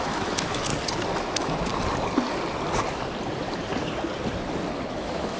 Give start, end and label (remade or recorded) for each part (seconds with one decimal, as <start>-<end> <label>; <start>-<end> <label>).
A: 0.0-0.7 remade; 0.7-1.2 recorded; 1.2-1.7 remade; 1.7-4.9 recorded; 4.9-5.4 remade